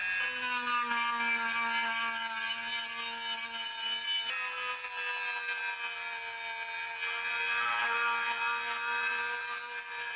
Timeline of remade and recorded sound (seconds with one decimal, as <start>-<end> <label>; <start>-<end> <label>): 0.0-10.2 recorded